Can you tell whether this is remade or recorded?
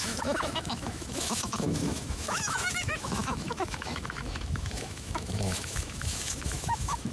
remade